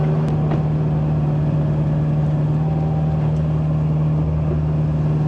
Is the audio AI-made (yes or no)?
no